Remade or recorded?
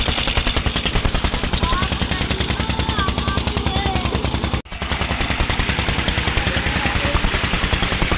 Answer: recorded